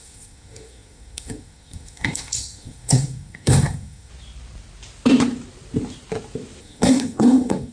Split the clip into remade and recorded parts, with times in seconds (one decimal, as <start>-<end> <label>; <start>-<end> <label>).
0.0-4.1 remade; 4.1-6.6 recorded; 6.6-7.7 remade